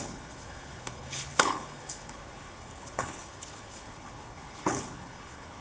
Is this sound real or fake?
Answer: fake